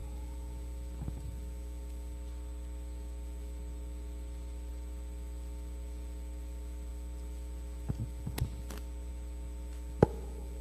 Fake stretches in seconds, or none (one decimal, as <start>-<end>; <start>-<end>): none